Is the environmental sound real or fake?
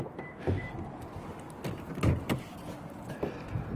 real